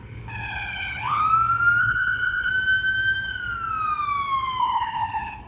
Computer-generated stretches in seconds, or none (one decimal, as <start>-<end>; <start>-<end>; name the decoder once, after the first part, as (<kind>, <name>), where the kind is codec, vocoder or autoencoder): 0.0-1.2 (codec, HILCodec); 1.8-2.5; 4.6-5.5